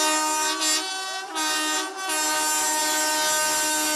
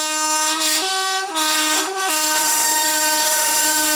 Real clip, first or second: first